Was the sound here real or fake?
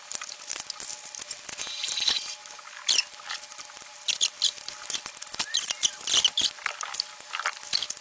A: real